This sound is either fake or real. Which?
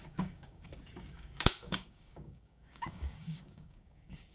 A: fake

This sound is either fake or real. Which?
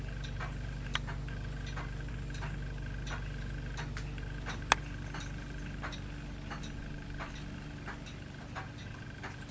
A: real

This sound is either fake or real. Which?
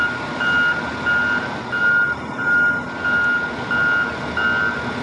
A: real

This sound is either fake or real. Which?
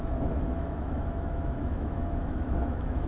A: fake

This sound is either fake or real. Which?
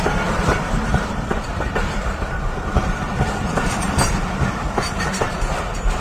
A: fake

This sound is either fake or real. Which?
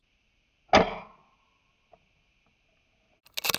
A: real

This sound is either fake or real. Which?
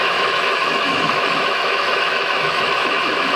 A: fake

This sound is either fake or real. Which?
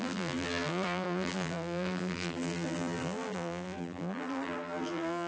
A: fake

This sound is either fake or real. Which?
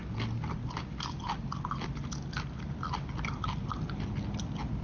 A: real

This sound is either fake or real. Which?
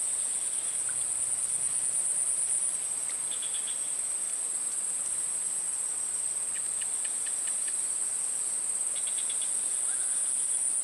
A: real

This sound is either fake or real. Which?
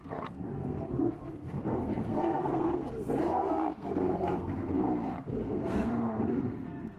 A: fake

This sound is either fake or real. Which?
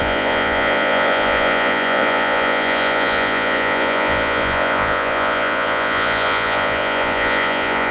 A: fake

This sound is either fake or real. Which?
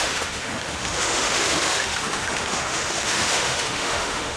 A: fake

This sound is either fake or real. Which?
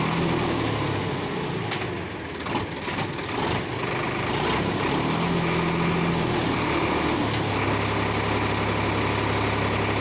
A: real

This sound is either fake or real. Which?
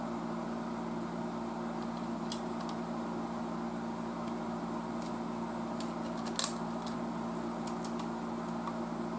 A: real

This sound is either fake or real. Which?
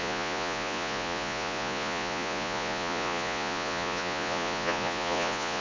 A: fake